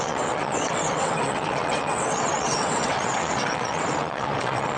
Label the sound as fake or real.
fake